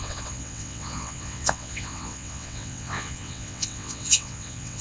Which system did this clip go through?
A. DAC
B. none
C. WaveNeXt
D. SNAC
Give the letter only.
C